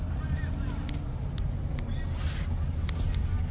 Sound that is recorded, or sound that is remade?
recorded